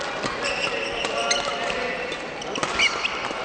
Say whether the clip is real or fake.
real